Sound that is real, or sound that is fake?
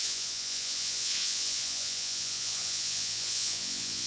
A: fake